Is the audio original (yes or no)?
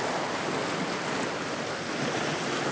yes